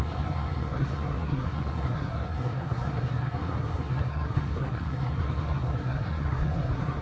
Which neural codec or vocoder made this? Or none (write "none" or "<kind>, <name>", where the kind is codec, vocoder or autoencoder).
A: codec, SNAC